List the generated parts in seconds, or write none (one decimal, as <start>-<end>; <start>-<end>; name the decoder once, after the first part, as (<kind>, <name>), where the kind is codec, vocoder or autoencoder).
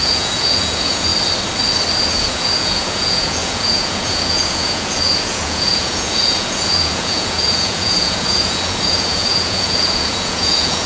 0.0-1.1 (vocoder, Vocos); 2.1-10.9